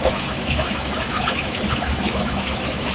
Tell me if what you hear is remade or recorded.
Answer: remade